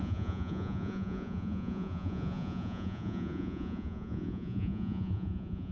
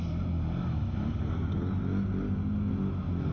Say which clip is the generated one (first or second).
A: first